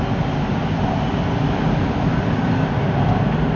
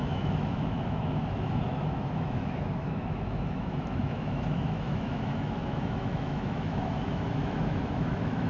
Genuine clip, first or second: first